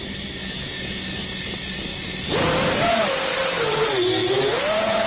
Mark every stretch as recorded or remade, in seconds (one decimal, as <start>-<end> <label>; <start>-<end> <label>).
0.0-0.4 recorded; 0.4-1.0 remade; 1.0-4.2 recorded; 4.2-5.1 remade